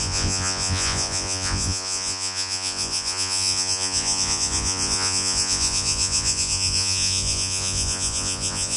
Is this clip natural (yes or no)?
no